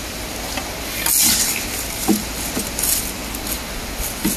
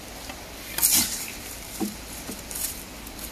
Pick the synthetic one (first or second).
second